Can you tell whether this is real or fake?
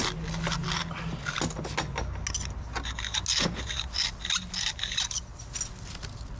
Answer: real